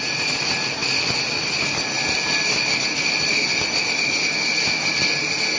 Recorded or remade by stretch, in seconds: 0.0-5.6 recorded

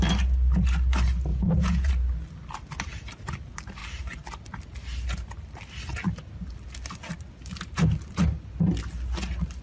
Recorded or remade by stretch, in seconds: 0.0-1.3 recorded; 1.3-1.9 remade; 1.9-9.6 recorded

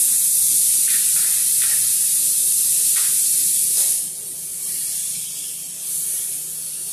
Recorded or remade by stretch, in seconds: 0.0-1.0 recorded; 1.0-1.6 remade; 1.6-4.5 recorded; 4.5-6.0 remade; 6.0-6.9 recorded

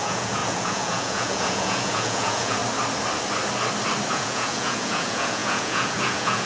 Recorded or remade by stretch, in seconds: 0.0-2.6 remade; 2.6-4.1 recorded; 4.1-6.5 remade